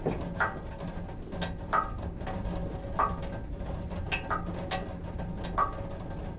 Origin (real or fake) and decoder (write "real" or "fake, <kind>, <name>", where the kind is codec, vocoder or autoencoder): real